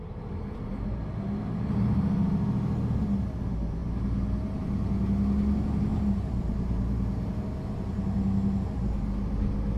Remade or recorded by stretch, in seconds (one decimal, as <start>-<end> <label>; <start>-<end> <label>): 0.0-3.8 recorded; 3.8-4.7 remade; 4.7-5.9 recorded; 5.9-8.0 remade; 8.0-9.8 recorded